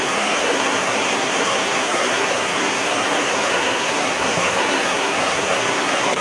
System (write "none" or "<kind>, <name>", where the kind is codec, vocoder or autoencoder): codec, SNAC